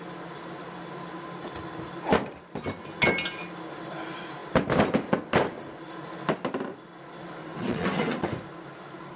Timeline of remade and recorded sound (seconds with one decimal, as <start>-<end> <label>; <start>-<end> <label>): 0.0-7.4 recorded; 7.4-8.3 remade; 8.3-9.2 recorded